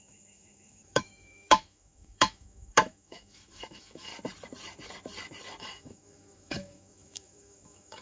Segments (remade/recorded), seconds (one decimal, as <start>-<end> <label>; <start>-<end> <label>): 0.0-4.1 remade; 4.1-5.6 recorded; 5.6-8.0 remade